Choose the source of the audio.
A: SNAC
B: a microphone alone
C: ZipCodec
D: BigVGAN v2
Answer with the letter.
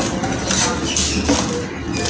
B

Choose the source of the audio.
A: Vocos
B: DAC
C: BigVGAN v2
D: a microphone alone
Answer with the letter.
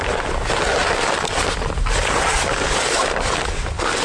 D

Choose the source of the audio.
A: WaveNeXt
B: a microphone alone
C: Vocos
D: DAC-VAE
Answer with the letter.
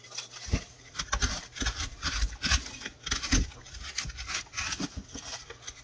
B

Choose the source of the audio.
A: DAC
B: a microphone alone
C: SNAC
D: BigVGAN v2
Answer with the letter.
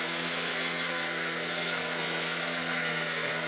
C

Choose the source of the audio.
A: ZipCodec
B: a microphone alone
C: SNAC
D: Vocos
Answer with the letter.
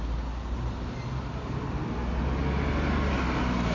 B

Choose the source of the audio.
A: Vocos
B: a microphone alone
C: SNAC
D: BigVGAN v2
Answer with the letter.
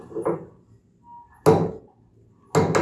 B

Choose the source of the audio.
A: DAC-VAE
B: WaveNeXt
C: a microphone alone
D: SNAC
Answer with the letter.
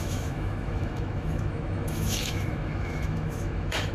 A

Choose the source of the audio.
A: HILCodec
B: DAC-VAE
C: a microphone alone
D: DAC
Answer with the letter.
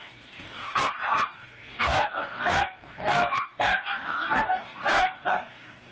D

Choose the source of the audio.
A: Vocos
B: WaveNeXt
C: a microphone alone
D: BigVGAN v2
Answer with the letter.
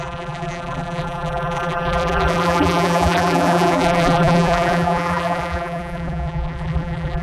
D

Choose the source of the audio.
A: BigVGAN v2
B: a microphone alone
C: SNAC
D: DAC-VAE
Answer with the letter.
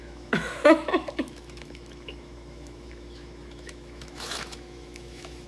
D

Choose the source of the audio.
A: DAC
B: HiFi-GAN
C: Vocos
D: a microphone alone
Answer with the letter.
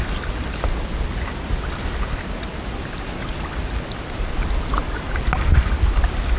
D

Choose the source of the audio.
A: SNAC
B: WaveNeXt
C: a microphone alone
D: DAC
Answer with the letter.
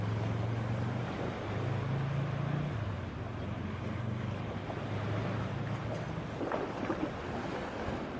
C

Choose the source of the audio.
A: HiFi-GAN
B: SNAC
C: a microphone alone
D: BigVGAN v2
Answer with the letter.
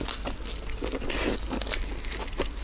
C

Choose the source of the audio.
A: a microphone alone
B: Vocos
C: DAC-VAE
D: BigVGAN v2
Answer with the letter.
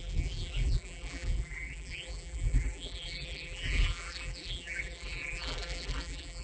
D